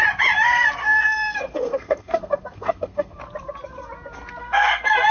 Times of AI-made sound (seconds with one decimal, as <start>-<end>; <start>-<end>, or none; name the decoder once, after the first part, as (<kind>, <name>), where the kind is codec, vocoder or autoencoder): 0.8-3.2 (codec, SNAC); 4.4-5.1